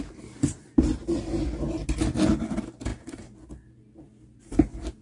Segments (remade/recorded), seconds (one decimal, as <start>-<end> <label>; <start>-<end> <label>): 0.0-5.0 recorded